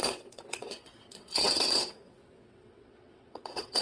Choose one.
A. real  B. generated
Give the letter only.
B